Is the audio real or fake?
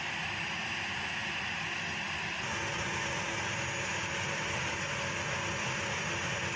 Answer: real